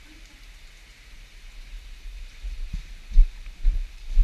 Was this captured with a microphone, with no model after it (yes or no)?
no